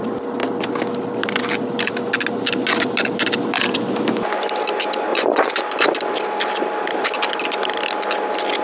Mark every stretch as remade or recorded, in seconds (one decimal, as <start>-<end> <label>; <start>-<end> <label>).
0.0-5.1 recorded; 5.1-5.6 remade; 5.6-8.6 recorded

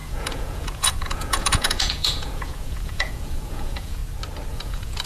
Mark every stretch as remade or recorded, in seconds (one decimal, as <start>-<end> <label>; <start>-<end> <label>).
0.0-4.0 remade; 4.0-4.5 recorded; 4.5-5.1 remade

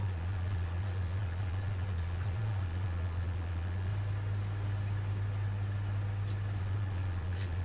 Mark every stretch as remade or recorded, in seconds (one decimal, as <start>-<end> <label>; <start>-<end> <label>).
0.0-3.9 remade; 3.9-6.6 recorded; 6.6-7.6 remade

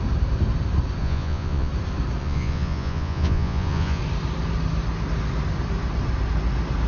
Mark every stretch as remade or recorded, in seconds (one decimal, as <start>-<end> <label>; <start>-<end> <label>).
0.0-1.0 recorded; 1.0-1.7 remade; 1.7-2.2 recorded; 2.2-4.0 remade; 4.0-6.9 recorded

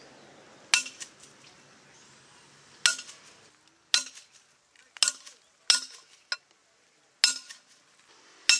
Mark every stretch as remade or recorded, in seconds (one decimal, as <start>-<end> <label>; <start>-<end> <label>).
0.0-8.6 recorded

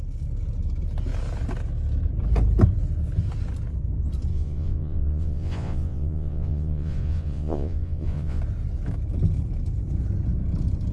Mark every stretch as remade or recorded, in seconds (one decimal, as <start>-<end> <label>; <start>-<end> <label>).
0.0-4.3 recorded; 4.3-8.4 remade; 8.4-10.9 recorded

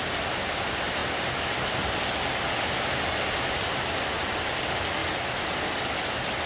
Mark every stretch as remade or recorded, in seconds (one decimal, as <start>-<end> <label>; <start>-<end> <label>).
0.0-6.5 recorded

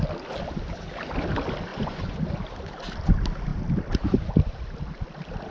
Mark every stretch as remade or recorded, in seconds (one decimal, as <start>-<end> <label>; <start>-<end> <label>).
0.0-1.7 recorded; 1.7-2.2 remade; 2.2-5.5 recorded